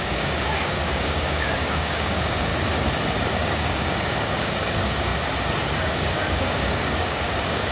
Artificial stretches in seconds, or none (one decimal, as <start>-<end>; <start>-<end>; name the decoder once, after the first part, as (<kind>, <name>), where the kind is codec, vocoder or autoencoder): 0.0-2.5 (codec, DAC); 3.3-5.1; 5.8-7.7